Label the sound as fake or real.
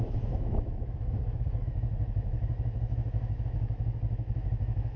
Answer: fake